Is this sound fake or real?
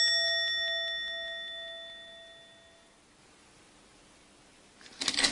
real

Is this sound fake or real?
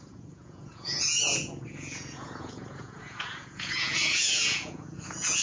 fake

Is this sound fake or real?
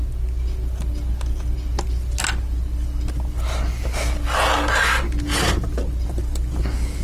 real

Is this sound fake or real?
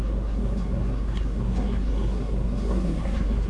fake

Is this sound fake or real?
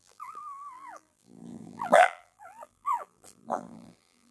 fake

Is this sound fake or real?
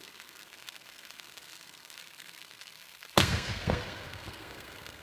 fake